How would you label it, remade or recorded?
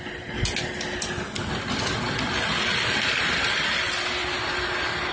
recorded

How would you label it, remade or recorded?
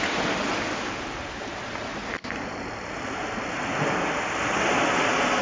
recorded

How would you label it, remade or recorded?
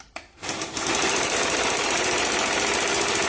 recorded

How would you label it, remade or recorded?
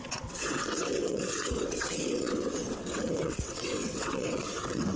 remade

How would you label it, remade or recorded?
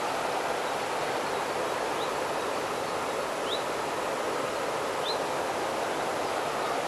recorded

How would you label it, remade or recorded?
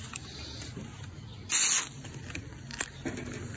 recorded